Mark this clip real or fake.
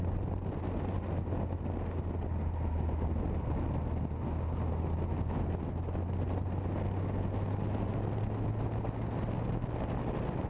real